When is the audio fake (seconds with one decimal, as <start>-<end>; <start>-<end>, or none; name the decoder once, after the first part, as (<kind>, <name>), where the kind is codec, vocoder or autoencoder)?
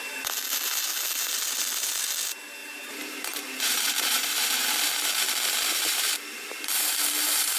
2.6-7.6 (vocoder, BigVGAN v2)